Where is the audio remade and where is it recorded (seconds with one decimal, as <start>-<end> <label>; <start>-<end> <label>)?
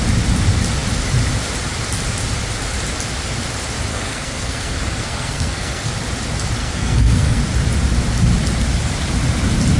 0.0-3.9 recorded; 3.9-5.9 remade; 5.9-6.6 recorded; 6.6-7.4 remade; 7.4-9.8 recorded